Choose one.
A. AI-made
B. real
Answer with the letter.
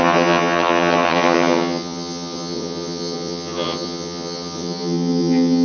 A